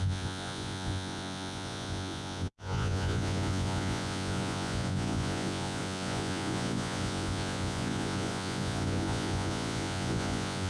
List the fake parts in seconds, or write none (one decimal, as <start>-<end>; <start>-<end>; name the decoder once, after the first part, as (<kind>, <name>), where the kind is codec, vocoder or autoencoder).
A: 0.0-10.7 (vocoder, Vocos)